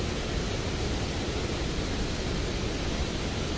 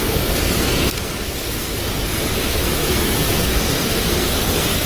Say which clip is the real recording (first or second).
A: first